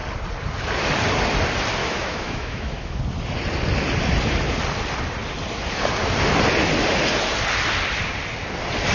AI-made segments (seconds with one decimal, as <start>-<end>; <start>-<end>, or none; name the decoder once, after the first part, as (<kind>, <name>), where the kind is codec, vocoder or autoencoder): 1.8-3.0 (autoencoder, DAC-VAE)